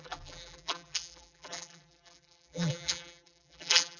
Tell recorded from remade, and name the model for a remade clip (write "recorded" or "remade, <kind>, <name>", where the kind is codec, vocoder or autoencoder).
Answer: remade, vocoder, BigVGAN v2